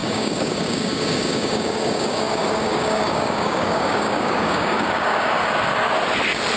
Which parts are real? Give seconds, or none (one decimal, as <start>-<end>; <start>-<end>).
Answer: 5.4-6.6